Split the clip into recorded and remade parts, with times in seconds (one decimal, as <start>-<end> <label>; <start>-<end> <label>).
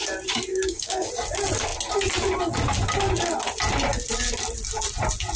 0.0-0.5 recorded; 0.5-1.1 remade; 1.1-5.4 recorded